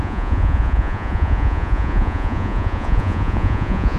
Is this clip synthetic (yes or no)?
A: yes